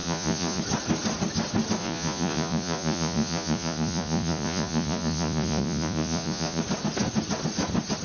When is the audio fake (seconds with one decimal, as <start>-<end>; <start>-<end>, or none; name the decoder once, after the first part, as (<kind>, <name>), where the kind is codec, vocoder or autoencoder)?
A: 0.0-0.6 (vocoder, Vocos); 1.8-6.6